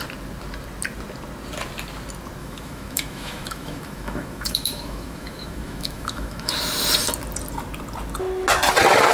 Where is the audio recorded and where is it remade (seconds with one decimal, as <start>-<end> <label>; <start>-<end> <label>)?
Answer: 0.0-2.4 recorded; 2.4-6.5 remade; 6.5-9.1 recorded